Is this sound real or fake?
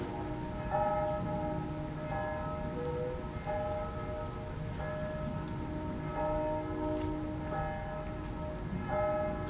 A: real